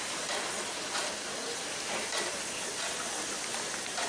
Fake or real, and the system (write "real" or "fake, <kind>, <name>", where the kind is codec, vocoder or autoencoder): real